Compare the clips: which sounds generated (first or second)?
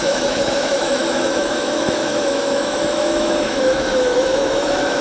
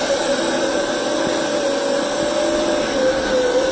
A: first